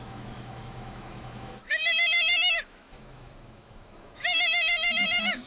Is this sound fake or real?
fake